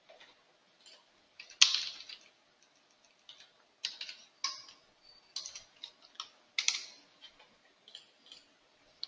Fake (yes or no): no